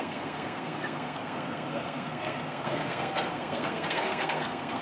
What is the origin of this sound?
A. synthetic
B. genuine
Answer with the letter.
A